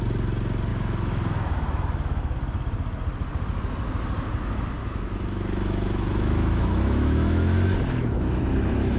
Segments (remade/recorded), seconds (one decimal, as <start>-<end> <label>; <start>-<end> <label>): 0.0-0.7 recorded; 0.7-2.2 remade; 2.2-4.8 recorded; 4.8-9.0 remade